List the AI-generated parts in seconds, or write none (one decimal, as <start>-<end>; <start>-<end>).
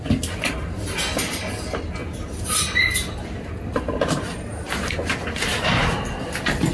2.0-3.8